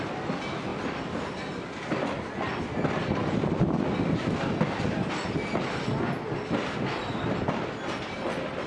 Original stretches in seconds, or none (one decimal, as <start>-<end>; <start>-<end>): 0.0-8.7